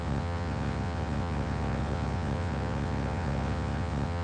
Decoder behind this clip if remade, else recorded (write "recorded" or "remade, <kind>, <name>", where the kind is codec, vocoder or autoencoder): remade, vocoder, WaveNeXt